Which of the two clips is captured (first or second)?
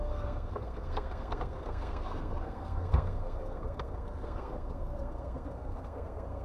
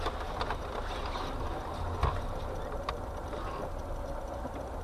second